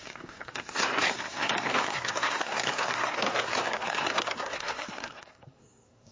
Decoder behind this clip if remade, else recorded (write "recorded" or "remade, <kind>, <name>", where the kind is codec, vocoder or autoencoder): remade, codec, SNAC